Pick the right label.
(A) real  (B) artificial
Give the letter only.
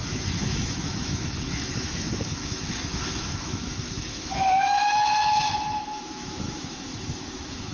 B